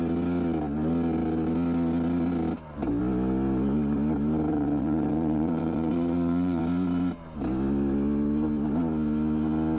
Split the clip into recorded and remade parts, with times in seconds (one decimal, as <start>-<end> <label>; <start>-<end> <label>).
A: 0.0-4.5 recorded; 4.5-6.6 remade; 6.6-9.8 recorded